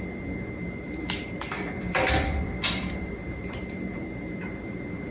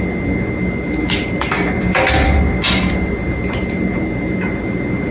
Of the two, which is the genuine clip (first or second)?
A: second